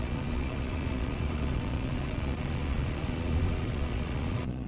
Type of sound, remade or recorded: remade